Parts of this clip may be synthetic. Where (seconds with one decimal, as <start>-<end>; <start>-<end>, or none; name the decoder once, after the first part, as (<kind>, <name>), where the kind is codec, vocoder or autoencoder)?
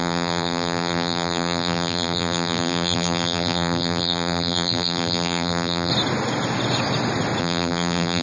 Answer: 0.0-5.9 (vocoder, BigVGAN v2); 7.4-8.2